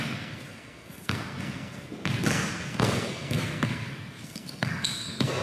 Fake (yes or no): yes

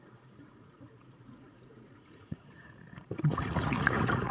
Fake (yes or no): yes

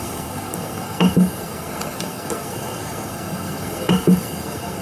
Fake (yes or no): yes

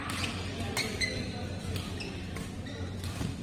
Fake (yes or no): no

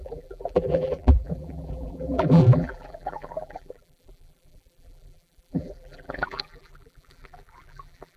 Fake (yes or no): yes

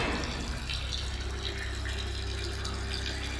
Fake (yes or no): no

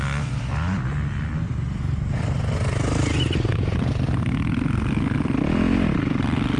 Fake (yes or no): no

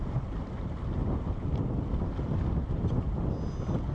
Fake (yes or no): no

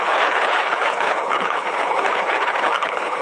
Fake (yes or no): yes